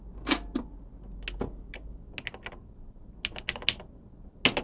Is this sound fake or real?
real